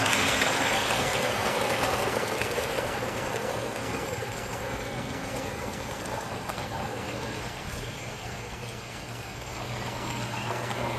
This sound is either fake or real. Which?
fake